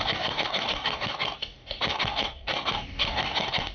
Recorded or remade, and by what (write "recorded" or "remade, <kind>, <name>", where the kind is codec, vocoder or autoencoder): remade, codec, DAC